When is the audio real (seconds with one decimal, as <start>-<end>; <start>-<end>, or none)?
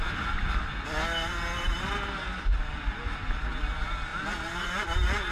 0.0-5.3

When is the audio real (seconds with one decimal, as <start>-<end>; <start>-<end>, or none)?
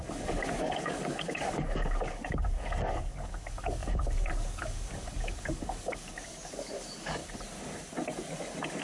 7.2-8.8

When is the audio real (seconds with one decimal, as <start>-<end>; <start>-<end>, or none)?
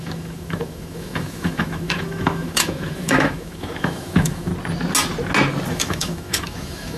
4.5-5.7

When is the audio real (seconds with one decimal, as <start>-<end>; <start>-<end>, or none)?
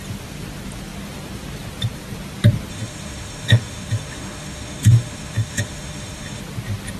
0.0-2.7; 6.4-7.0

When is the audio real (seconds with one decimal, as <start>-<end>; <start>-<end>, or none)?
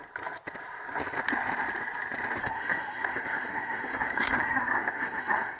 0.0-2.4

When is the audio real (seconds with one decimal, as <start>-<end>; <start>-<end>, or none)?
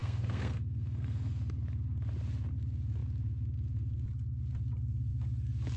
1.3-5.8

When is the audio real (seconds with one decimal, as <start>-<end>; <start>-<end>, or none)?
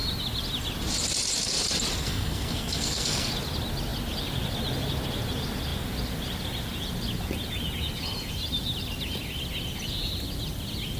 0.0-2.0; 3.3-11.0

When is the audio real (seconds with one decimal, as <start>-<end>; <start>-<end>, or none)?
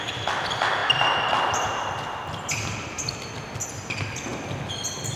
0.0-5.2